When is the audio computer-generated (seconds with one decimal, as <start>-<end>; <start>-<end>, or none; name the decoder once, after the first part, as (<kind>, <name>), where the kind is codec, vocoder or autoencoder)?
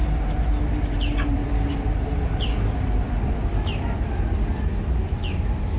none